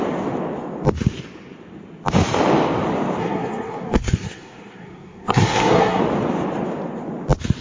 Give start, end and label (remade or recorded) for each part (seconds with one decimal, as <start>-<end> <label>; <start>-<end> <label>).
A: 0.0-3.2 recorded; 3.2-6.0 remade; 6.0-7.6 recorded